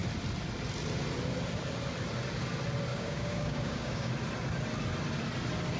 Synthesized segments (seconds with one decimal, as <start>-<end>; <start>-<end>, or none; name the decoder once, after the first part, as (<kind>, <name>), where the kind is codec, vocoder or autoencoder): 2.9-4.1 (codec, DAC)